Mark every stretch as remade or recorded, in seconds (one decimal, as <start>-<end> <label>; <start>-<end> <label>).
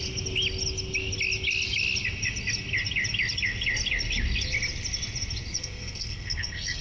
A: 0.0-5.6 recorded; 5.6-6.8 remade